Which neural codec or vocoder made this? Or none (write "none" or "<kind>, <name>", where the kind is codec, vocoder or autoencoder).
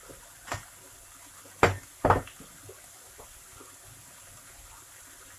none